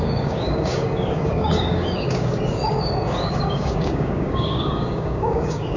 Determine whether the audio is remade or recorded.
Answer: remade